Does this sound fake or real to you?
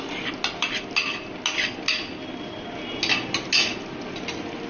real